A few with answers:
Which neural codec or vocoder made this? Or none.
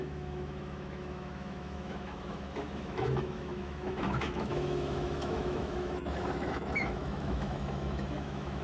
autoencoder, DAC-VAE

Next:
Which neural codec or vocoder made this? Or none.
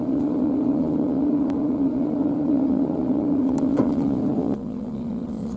vocoder, Vocos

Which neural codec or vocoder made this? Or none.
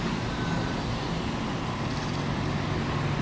none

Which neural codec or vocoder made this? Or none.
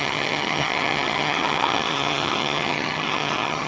vocoder, HiFi-GAN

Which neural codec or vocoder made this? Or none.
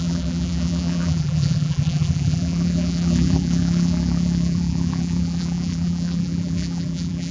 vocoder, BigVGAN v2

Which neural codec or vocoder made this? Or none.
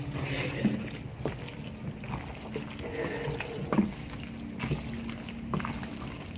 none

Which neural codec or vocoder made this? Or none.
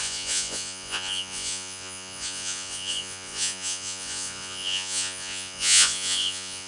vocoder, Vocos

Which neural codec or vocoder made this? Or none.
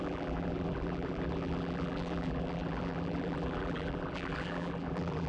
vocoder, BigVGAN v2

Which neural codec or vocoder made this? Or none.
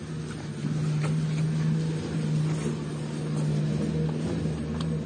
none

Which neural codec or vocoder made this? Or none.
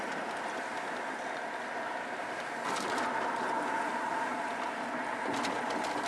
none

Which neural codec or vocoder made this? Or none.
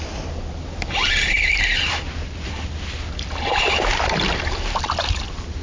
none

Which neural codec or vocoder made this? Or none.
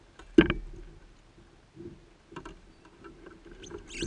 none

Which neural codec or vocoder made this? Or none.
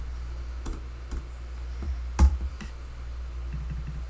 none